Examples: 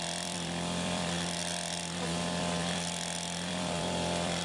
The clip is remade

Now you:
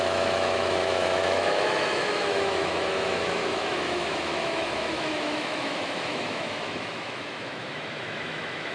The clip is remade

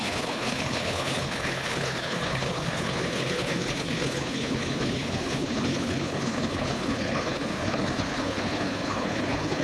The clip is remade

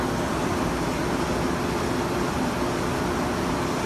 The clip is recorded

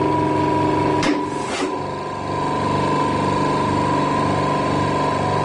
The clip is recorded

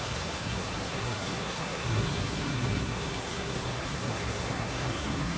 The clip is remade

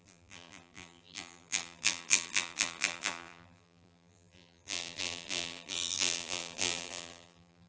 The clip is remade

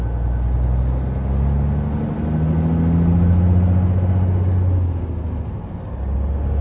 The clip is recorded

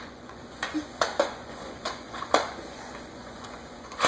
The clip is remade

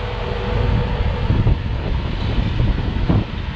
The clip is recorded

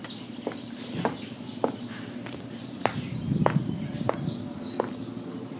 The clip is remade